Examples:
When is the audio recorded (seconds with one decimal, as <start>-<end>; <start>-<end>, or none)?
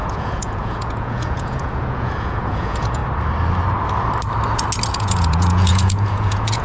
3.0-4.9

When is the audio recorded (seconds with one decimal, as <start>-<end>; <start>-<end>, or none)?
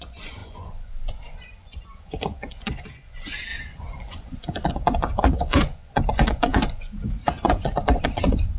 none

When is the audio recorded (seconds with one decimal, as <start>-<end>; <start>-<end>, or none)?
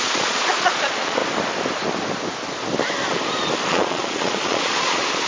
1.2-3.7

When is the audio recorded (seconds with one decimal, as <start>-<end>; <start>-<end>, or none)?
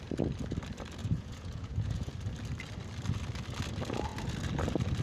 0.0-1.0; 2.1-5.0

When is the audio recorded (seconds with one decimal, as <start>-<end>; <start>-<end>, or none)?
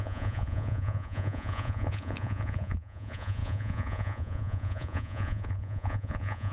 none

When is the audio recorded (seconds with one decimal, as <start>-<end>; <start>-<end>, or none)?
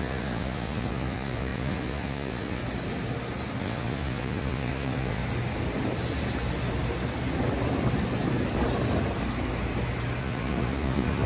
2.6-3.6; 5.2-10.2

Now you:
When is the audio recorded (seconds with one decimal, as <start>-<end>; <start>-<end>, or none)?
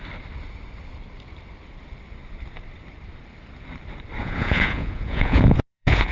0.0-4.2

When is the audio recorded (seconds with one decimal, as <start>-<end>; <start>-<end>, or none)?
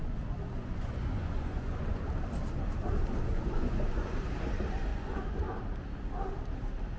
2.0-3.3; 4.3-4.9; 5.6-7.0